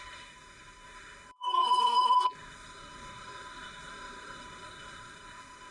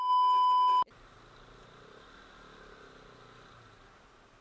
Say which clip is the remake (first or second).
first